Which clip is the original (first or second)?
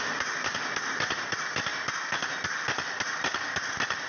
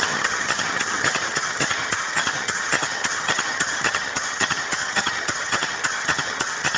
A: first